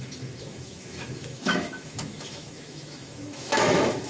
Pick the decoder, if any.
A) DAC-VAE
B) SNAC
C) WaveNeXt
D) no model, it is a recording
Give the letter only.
A